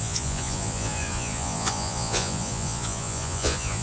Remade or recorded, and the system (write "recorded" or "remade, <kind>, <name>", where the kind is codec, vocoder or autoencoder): remade, vocoder, Vocos